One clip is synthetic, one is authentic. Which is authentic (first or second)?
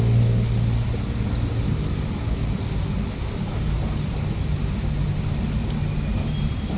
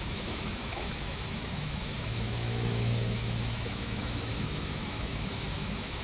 first